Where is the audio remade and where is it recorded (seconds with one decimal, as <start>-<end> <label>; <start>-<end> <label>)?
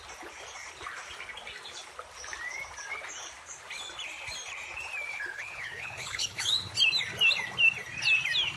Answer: 0.0-5.1 recorded; 5.1-6.7 remade; 6.7-8.6 recorded